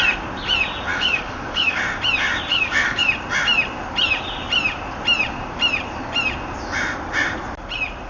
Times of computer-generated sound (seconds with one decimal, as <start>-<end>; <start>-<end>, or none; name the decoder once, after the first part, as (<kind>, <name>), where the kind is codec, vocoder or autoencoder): 0.9-1.8 (codec, DAC); 2.5-3.1